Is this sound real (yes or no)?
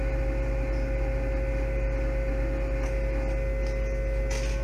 yes